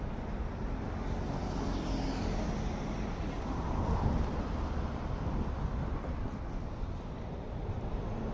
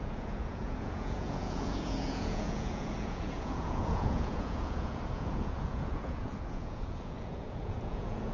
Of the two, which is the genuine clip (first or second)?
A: first